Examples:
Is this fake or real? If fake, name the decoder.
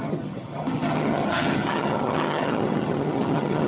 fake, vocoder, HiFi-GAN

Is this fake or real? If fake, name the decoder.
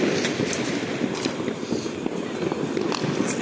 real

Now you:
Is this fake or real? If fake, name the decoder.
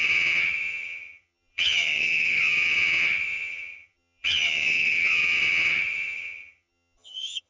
fake, vocoder, HiFi-GAN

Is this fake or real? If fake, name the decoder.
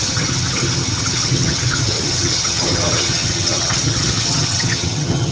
fake, vocoder, HiFi-GAN